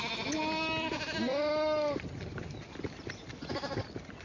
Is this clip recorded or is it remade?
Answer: recorded